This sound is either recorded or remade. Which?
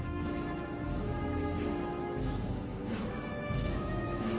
remade